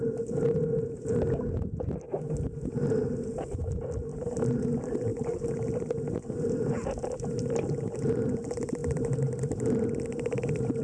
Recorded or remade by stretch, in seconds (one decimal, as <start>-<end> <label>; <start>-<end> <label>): 0.0-4.1 recorded; 4.1-4.6 remade; 4.6-8.8 recorded; 8.8-9.4 remade; 9.4-10.8 recorded